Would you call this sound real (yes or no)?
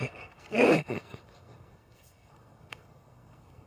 no